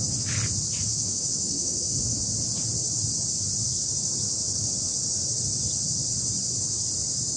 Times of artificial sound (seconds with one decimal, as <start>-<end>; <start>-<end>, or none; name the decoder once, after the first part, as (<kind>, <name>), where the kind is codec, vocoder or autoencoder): 0.9-2.2 (autoencoder, DAC-VAE)